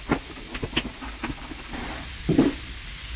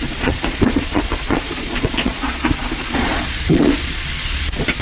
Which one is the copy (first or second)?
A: second